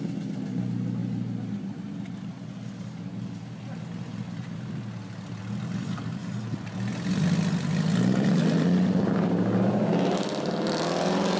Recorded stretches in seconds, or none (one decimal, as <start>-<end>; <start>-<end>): 0.0-11.4